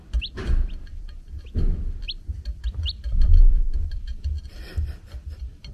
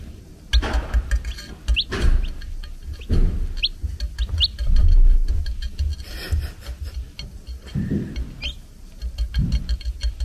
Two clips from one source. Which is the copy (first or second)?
first